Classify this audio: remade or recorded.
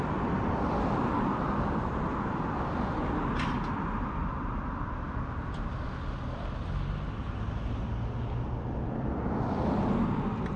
recorded